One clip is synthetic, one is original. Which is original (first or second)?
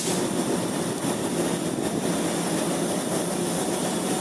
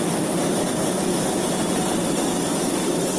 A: first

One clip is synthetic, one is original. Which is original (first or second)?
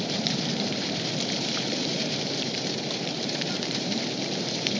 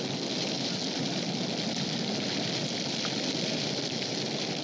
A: second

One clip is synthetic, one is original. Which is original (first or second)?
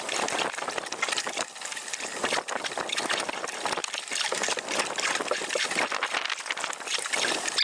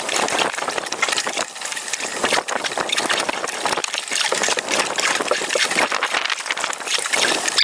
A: first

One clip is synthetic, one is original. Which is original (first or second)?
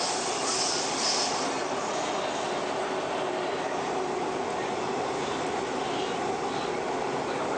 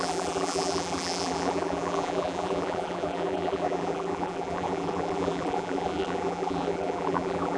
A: first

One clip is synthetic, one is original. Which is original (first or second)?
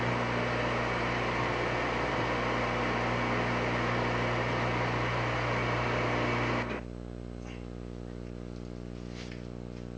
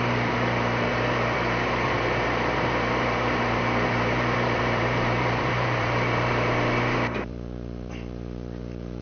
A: first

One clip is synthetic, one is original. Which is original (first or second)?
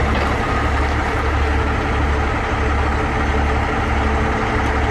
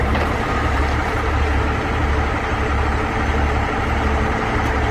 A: first